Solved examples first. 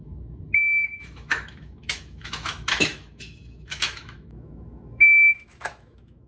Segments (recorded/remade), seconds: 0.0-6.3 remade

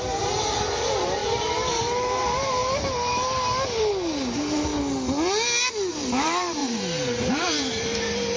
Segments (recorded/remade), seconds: 0.0-4.7 remade; 4.7-5.9 recorded; 5.9-8.4 remade

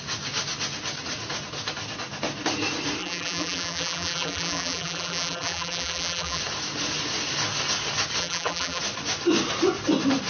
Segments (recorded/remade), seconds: 0.0-3.0 recorded; 3.0-6.4 remade; 6.4-8.2 recorded; 8.2-8.8 remade; 8.8-10.3 recorded